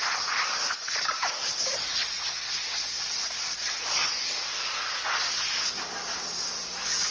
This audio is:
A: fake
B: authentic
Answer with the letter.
B